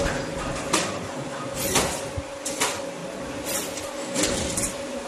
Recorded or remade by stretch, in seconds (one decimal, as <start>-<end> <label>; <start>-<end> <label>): 0.0-5.1 recorded